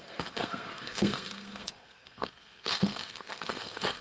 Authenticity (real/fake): fake